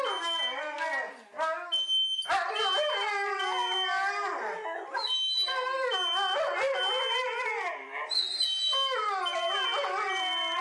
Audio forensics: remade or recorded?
recorded